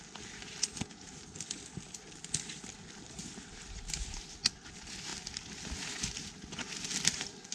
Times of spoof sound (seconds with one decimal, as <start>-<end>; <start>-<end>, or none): none